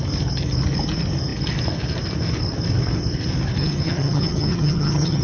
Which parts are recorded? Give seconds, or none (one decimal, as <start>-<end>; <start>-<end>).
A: 0.0-3.6